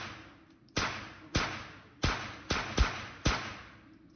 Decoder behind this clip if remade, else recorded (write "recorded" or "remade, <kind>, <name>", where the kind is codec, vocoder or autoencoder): recorded